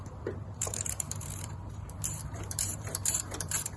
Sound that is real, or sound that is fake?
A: fake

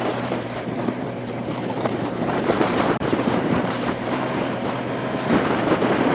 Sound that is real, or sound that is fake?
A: fake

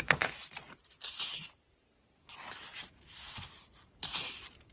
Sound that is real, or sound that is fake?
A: fake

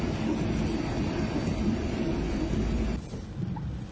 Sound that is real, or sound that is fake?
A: real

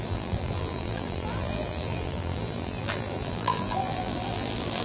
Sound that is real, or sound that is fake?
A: fake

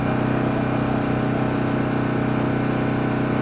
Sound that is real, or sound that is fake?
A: real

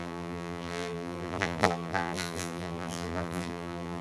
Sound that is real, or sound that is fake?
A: fake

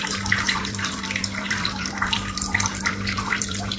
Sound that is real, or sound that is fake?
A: fake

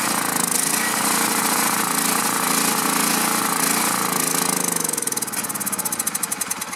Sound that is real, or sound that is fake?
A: real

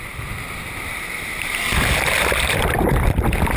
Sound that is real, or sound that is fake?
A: fake